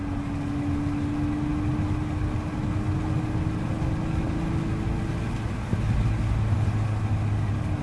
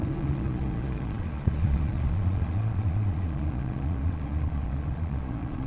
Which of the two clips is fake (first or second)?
second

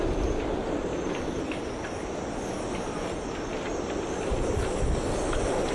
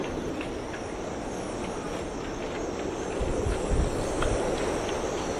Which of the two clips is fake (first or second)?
first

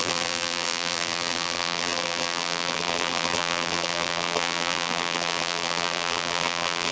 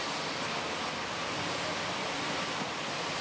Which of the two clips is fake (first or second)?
first